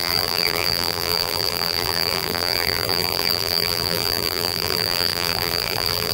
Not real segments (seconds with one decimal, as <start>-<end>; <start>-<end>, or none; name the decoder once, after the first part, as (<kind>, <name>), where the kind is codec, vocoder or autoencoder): 0.0-6.1 (vocoder, BigVGAN v2)